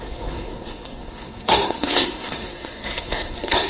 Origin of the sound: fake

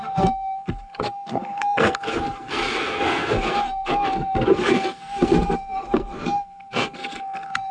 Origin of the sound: fake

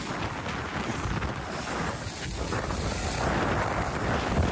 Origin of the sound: real